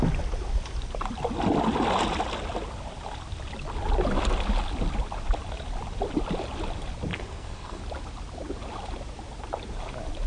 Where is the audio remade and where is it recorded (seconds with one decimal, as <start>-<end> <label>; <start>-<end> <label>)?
0.0-7.1 recorded; 7.1-7.8 remade; 7.8-10.3 recorded